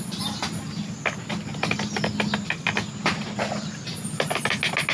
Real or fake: real